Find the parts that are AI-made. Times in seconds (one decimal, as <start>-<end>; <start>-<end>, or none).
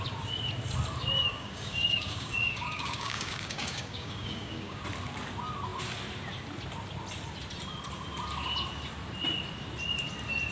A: 1.2-4.8